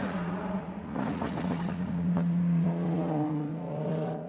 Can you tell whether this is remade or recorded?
remade